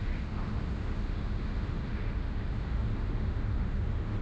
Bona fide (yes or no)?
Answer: no